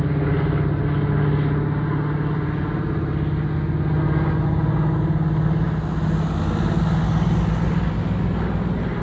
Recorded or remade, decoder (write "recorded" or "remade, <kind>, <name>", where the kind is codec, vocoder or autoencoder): recorded